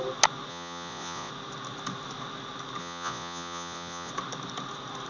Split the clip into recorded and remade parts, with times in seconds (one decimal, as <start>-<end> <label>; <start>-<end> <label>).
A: 0.0-0.5 recorded; 0.5-1.3 remade; 1.3-2.8 recorded; 2.8-4.1 remade; 4.1-5.1 recorded